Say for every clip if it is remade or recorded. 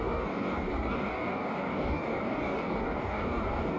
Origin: remade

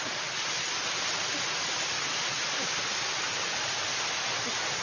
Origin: recorded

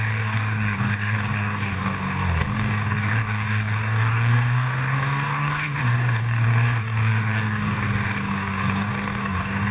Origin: remade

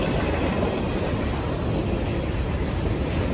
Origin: recorded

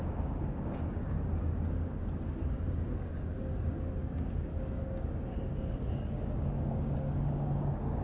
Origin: remade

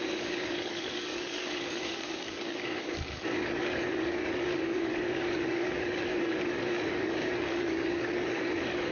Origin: remade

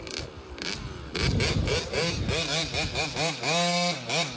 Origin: recorded